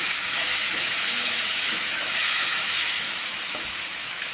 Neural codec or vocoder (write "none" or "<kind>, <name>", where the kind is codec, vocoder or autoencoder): autoencoder, DAC-VAE